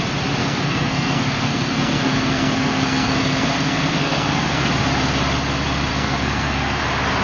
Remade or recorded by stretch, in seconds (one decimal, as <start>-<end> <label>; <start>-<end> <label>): 0.0-0.4 recorded; 0.4-4.7 remade; 4.7-5.9 recorded; 5.9-6.8 remade; 6.8-7.2 recorded

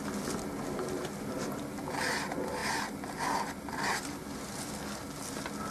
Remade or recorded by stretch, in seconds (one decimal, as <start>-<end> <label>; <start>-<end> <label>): 0.0-5.7 recorded

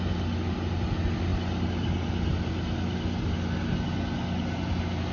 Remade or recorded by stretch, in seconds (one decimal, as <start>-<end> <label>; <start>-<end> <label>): 0.0-5.1 recorded